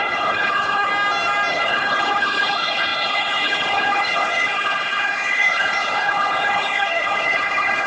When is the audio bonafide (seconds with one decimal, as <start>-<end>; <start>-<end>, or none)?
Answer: 0.9-1.5